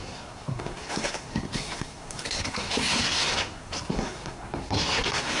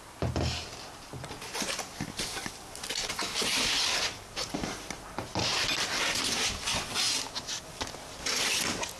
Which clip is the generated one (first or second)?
first